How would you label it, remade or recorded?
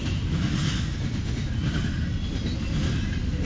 recorded